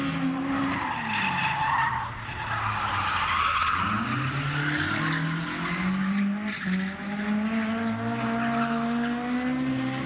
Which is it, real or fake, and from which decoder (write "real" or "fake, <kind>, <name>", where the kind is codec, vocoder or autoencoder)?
real